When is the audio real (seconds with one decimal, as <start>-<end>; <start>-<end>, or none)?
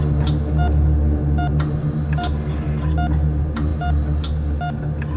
0.0-5.2